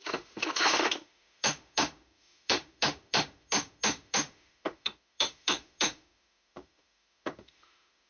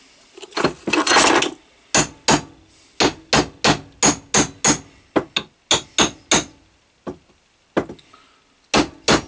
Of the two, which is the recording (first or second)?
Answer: second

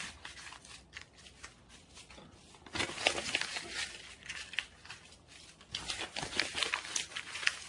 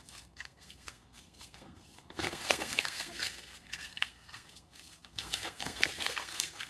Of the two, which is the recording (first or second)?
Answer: first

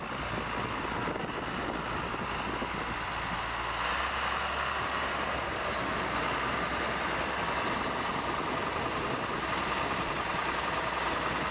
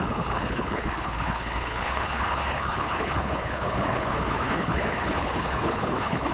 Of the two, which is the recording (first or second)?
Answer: first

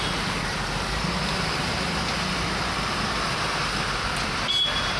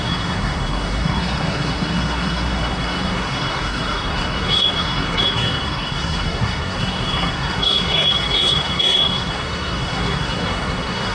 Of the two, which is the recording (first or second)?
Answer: first